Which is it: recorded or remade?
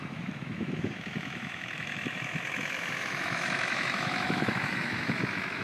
remade